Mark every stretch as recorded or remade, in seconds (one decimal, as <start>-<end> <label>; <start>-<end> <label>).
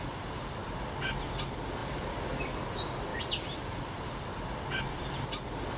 0.0-5.8 recorded